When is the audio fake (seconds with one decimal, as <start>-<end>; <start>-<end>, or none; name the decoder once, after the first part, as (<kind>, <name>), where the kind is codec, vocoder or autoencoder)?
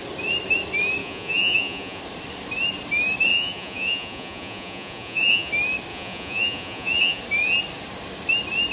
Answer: 1.0-2.0 (vocoder, Vocos); 3.3-5.5; 5.9-7.2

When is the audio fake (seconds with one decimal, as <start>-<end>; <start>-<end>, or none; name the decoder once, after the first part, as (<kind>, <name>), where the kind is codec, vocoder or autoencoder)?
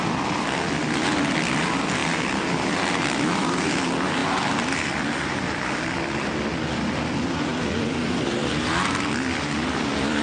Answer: 2.0-3.4 (vocoder, BigVGAN v2); 7.5-8.6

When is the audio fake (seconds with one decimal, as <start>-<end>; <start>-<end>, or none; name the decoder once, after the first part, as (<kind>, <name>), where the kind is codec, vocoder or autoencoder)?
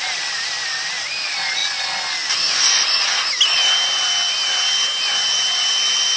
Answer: none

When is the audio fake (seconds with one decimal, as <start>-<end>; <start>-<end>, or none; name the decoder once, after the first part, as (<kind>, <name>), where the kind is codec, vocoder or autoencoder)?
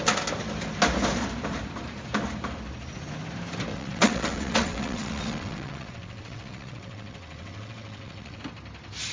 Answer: 3.7-8.4 (vocoder, WaveNeXt)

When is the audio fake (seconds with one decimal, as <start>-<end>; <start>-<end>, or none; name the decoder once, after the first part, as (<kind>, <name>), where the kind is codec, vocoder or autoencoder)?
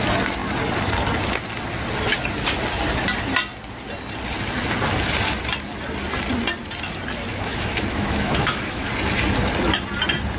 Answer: 7.3-8.9 (autoencoder, DAC-VAE)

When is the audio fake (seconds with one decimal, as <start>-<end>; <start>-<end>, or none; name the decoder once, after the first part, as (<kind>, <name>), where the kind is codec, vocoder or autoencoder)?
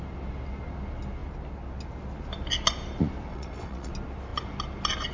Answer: 3.3-3.9 (vocoder, WaveNeXt)